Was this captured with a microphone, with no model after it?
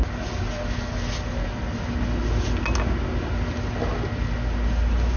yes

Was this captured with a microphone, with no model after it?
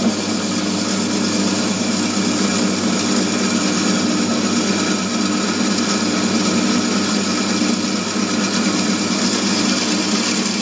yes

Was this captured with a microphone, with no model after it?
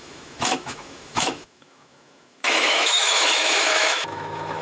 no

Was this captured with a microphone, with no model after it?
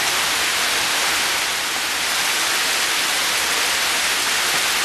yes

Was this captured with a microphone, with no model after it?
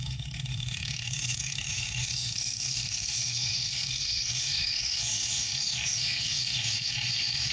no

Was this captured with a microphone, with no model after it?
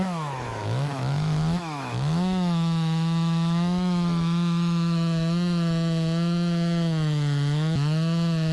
no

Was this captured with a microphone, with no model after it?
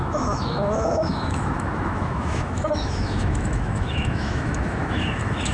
no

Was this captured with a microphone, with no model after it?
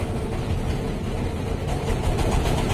yes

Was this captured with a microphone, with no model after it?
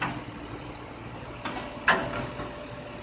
yes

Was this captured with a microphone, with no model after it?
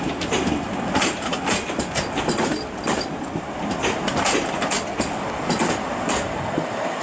yes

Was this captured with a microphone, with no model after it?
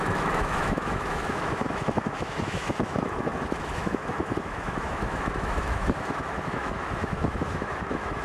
no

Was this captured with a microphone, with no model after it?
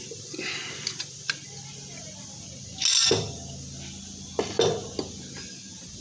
yes